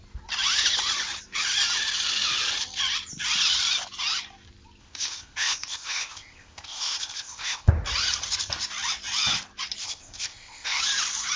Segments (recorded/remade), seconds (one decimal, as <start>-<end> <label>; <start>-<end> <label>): 0.0-4.8 recorded; 4.8-7.7 remade; 7.7-9.8 recorded; 9.8-10.8 remade; 10.8-11.4 recorded